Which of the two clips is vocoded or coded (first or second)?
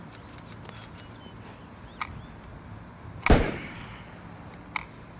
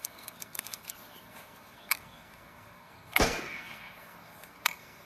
second